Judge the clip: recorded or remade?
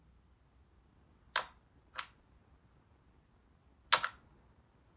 recorded